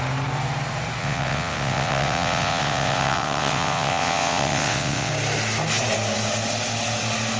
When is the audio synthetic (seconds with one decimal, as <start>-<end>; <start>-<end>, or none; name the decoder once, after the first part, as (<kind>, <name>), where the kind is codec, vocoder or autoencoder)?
1.0-5.1 (vocoder, WaveNeXt)